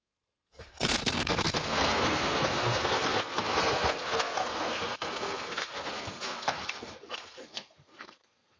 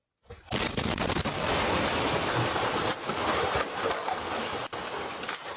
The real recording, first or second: second